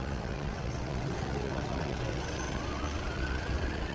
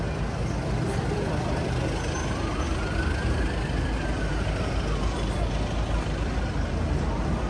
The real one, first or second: second